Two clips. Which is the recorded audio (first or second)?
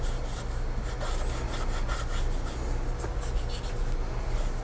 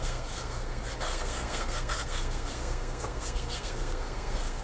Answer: first